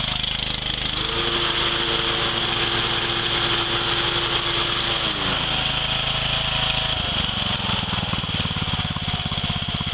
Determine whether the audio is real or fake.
real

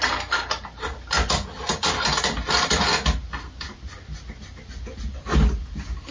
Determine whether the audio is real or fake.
real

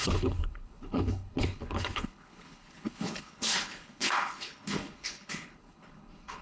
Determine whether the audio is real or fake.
fake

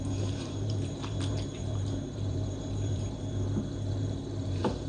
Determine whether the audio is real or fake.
fake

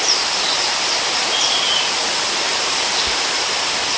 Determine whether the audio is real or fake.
fake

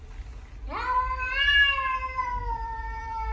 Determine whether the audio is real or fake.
fake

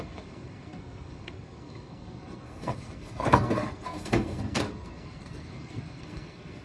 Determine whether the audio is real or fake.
fake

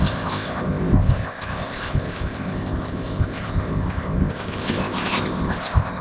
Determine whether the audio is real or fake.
fake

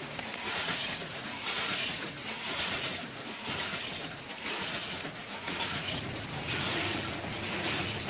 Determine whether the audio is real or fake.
fake